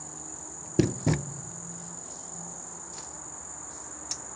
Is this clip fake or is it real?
real